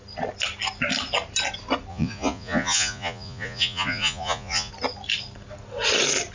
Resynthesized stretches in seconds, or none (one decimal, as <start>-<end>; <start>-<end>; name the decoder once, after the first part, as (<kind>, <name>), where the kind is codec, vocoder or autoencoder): 1.9-4.7 (vocoder, Vocos)